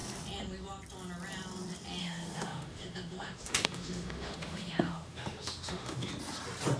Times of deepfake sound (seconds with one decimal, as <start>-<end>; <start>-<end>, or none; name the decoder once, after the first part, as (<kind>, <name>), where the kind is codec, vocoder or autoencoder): 2.0-6.1 (autoencoder, DAC-VAE)